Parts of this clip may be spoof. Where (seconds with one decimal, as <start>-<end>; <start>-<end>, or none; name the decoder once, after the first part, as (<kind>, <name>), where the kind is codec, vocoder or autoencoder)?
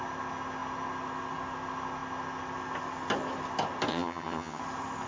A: 3.9-4.6 (vocoder, HiFi-GAN)